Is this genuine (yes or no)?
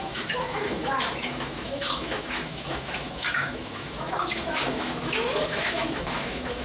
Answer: no